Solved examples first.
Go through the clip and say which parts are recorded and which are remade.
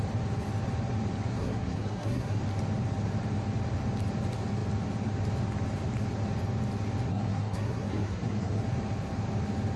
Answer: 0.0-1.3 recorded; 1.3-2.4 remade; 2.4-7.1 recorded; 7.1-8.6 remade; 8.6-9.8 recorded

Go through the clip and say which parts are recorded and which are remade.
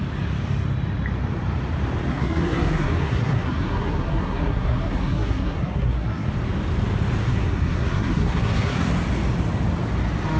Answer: 0.0-2.1 recorded; 2.1-6.3 remade; 6.3-7.2 recorded; 7.2-8.9 remade; 8.9-10.4 recorded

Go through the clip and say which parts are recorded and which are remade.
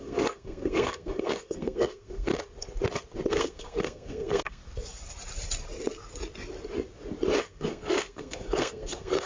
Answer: 0.0-2.3 remade; 2.3-3.3 recorded; 3.3-4.6 remade; 4.6-7.4 recorded; 7.4-9.3 remade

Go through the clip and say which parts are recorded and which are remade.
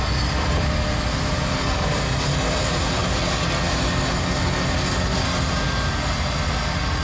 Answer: 0.0-7.0 recorded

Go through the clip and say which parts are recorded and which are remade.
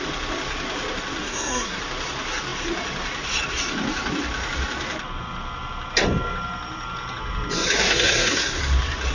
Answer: 0.0-1.2 recorded; 1.2-1.8 remade; 1.8-7.8 recorded; 7.8-8.6 remade; 8.6-9.1 recorded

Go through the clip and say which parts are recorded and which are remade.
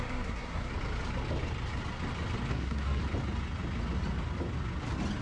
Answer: 0.0-0.7 remade; 0.7-2.5 recorded; 2.5-3.0 remade; 3.0-5.2 recorded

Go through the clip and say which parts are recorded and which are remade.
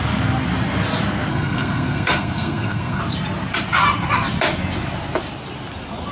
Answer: 0.0-1.3 recorded; 1.3-3.0 remade; 3.0-6.1 recorded